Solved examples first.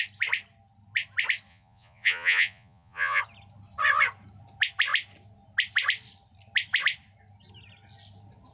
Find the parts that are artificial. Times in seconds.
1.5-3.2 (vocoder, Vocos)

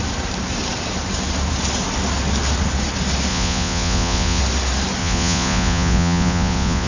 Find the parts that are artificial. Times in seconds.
3.3-4.4 (vocoder, Vocos); 5.0-6.9